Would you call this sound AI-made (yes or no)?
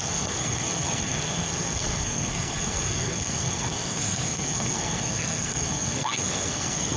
yes